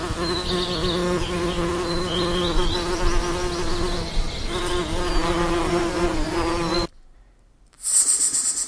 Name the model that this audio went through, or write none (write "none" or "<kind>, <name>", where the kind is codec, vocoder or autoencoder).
none